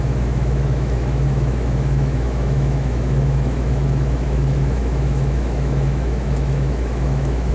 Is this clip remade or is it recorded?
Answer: remade